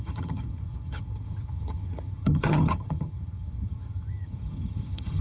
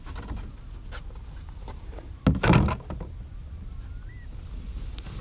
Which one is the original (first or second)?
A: second